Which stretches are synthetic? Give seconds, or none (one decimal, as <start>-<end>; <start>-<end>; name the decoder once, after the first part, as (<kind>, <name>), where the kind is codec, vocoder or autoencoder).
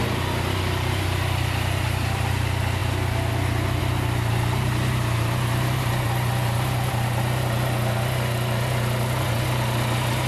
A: none